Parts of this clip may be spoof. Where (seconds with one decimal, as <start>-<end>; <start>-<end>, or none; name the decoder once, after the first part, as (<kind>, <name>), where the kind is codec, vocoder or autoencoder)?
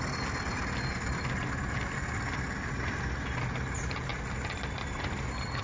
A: none